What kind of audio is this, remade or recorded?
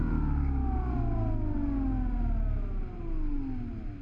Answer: recorded